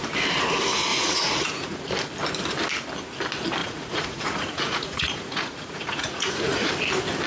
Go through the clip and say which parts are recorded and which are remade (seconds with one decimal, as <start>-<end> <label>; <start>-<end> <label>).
0.0-0.9 recorded; 0.9-1.9 remade; 1.9-3.6 recorded; 3.6-6.7 remade; 6.7-7.3 recorded